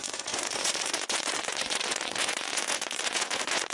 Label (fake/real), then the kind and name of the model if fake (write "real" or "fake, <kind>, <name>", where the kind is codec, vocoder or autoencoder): fake, vocoder, Vocos